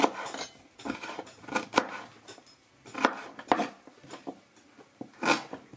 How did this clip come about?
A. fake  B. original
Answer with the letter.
B